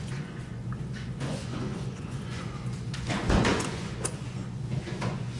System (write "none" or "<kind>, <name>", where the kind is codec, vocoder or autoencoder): vocoder, Vocos